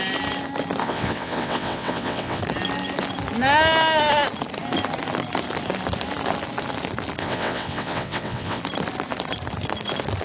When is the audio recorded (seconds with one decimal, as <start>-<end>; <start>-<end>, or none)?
0.0-0.8; 2.4-7.2; 8.6-10.2